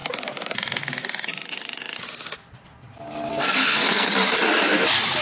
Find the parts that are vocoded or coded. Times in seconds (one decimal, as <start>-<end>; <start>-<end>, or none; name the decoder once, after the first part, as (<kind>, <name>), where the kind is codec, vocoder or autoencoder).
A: 3.3-4.1 (codec, SNAC)